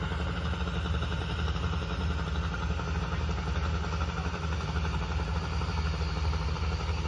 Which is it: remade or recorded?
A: recorded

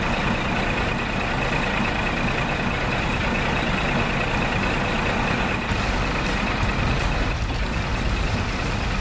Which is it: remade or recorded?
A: recorded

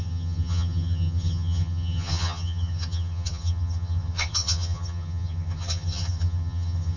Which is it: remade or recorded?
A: remade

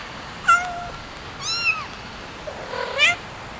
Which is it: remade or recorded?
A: recorded